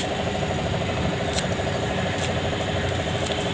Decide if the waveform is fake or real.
real